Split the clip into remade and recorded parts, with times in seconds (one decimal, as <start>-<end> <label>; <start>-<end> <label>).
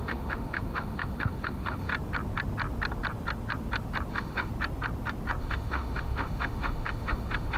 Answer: 0.0-1.9 remade; 1.9-4.1 recorded; 4.1-4.5 remade; 4.5-5.4 recorded; 5.4-7.6 remade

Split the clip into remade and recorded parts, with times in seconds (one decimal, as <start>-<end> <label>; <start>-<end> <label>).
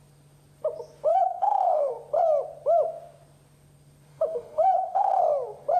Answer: 0.0-1.1 recorded; 1.1-1.9 remade; 1.9-4.1 recorded; 4.1-5.2 remade; 5.2-5.8 recorded